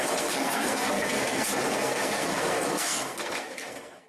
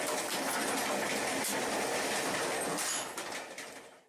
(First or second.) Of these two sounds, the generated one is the first